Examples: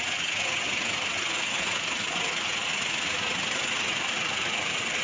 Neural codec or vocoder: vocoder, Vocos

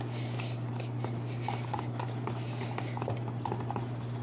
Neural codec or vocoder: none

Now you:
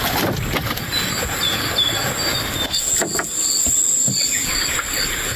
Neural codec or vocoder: none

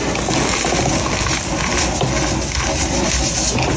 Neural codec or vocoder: none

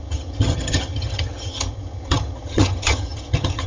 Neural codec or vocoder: vocoder, HiFi-GAN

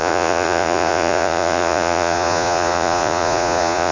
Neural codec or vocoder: vocoder, Vocos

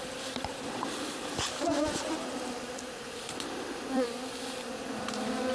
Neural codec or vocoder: vocoder, BigVGAN v2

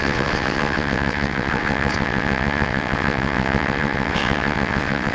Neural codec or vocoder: vocoder, WaveNeXt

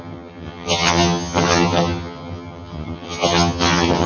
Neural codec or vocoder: vocoder, HiFi-GAN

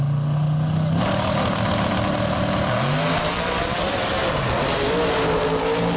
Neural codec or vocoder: none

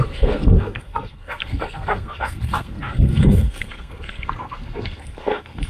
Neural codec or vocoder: codec, SNAC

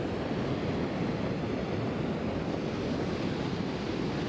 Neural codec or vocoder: none